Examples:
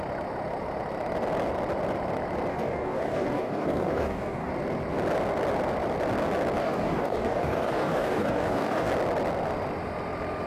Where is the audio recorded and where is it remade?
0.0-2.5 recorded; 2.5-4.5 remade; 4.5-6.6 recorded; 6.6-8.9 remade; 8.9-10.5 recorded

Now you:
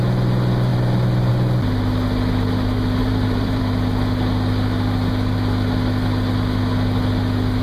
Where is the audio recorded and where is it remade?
0.0-3.0 recorded; 3.0-3.6 remade; 3.6-7.6 recorded

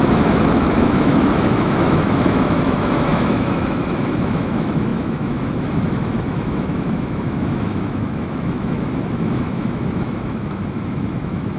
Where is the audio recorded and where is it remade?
0.0-11.6 remade